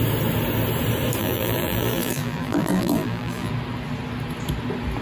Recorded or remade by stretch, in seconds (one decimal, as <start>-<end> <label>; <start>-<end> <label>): 0.0-1.2 recorded; 1.2-3.5 remade; 3.5-5.0 recorded